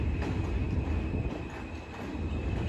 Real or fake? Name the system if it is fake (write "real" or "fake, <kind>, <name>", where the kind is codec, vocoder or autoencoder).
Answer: real